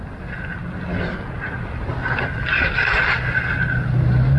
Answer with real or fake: real